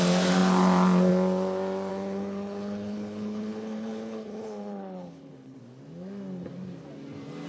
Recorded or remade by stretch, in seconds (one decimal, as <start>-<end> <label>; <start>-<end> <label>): 0.0-1.9 recorded; 1.9-5.6 remade; 5.6-7.5 recorded